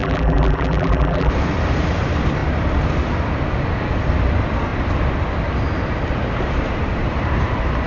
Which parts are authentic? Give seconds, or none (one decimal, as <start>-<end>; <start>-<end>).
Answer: 1.3-7.9

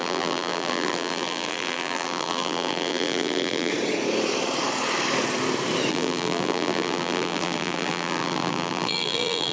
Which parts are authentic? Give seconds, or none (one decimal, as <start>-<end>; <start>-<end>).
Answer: 3.7-5.9

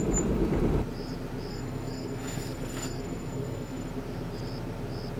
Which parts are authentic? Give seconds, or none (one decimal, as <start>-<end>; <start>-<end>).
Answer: 0.0-1.5; 3.9-5.2

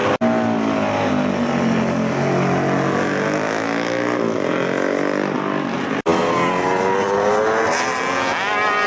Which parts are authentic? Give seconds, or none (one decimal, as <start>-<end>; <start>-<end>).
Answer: 0.0-8.9

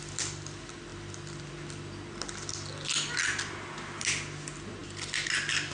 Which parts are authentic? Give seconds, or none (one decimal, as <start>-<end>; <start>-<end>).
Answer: 0.0-5.7

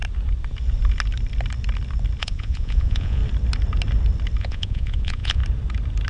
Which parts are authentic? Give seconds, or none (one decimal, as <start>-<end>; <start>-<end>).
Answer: 0.0-2.2; 3.2-4.4; 5.4-6.1